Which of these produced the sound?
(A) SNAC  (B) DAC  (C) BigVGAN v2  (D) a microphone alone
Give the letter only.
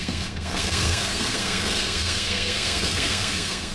A